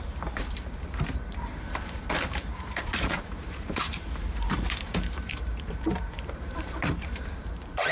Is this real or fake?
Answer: fake